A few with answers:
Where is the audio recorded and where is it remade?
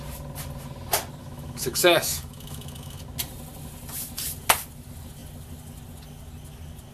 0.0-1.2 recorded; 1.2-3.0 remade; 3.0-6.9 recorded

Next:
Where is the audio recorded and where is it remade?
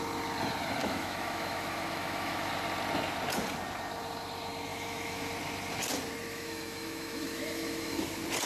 0.0-0.8 recorded; 0.8-2.5 remade; 2.5-4.7 recorded; 4.7-5.3 remade; 5.3-6.3 recorded; 6.3-8.1 remade; 8.1-8.5 recorded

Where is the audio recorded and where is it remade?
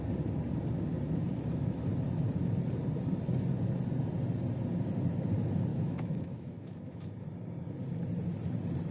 0.0-5.7 recorded; 5.7-7.1 remade; 7.1-8.9 recorded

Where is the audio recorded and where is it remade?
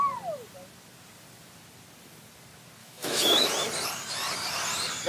0.0-2.8 recorded; 2.8-3.5 remade; 3.5-5.1 recorded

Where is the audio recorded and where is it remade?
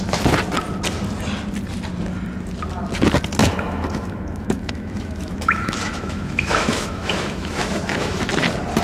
0.0-3.4 recorded; 3.4-8.3 remade; 8.3-8.8 recorded